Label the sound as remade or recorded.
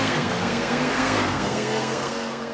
remade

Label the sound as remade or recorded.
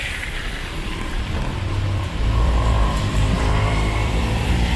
remade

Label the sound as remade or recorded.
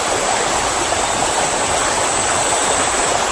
recorded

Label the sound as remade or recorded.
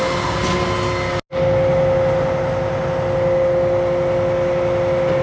recorded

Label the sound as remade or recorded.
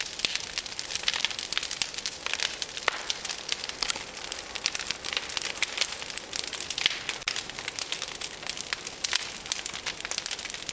recorded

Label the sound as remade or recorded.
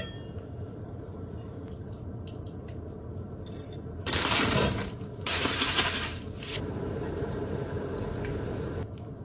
remade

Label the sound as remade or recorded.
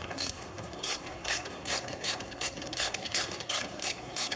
remade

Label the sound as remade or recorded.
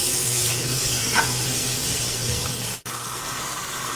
remade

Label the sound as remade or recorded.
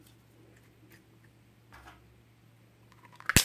recorded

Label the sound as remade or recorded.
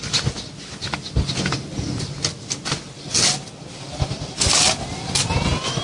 recorded